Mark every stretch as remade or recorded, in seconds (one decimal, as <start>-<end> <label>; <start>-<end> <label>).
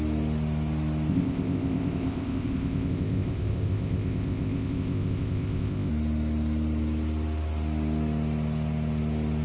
0.0-1.1 recorded; 1.1-5.9 remade; 5.9-9.4 recorded